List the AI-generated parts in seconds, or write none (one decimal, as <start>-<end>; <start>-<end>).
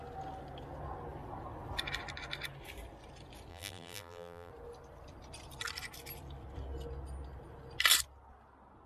3.5-4.5